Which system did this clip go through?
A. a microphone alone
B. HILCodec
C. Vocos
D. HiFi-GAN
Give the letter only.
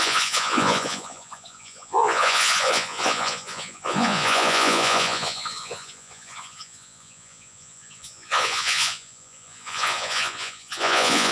C